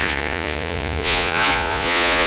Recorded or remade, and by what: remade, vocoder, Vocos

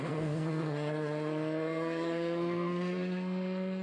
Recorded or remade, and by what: remade, codec, SNAC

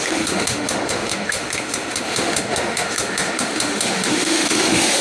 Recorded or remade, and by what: remade, autoencoder, DAC-VAE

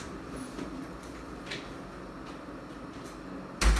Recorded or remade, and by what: recorded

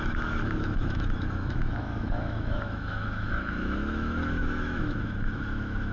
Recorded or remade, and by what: remade, autoencoder, DAC-VAE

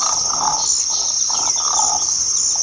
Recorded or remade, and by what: recorded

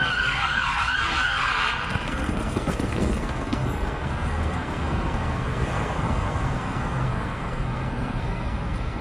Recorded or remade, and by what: remade, codec, SNAC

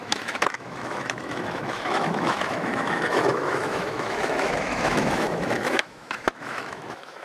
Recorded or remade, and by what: remade, autoencoder, DAC-VAE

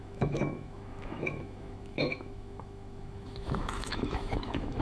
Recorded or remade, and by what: remade, autoencoder, DAC-VAE